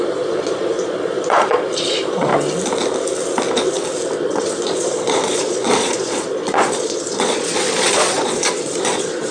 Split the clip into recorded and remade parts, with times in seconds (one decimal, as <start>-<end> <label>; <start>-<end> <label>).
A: 0.0-2.3 remade; 2.3-4.2 recorded; 4.2-9.3 remade